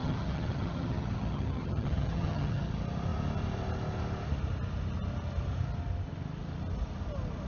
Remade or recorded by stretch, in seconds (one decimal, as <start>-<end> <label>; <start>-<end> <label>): 0.0-2.7 remade; 2.7-7.5 recorded